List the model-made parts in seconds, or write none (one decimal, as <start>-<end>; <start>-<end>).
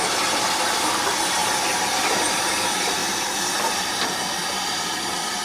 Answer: 0.0-3.0; 3.7-5.4